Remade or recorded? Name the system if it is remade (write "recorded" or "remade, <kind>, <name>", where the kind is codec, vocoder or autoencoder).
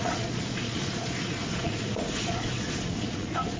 remade, vocoder, Vocos